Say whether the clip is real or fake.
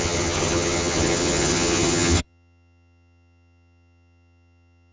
fake